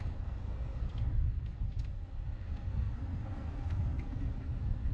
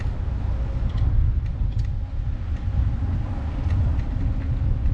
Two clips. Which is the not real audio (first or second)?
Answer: first